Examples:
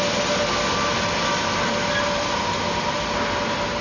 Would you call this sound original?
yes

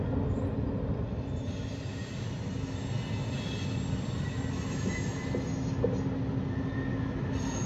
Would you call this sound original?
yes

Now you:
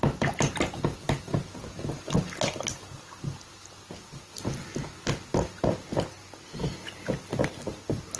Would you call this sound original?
yes